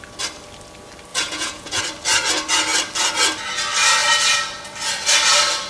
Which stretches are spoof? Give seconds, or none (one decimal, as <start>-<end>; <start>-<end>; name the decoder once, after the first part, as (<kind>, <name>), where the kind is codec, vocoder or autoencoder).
1.1-1.8 (vocoder, Vocos)